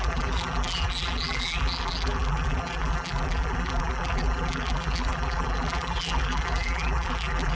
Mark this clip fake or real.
fake